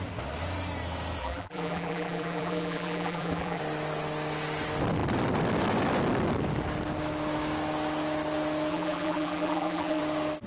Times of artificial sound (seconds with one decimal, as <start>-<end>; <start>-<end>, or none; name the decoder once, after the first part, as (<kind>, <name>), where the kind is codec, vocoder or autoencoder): 1.2-3.6 (vocoder, BigVGAN v2); 8.7-10.0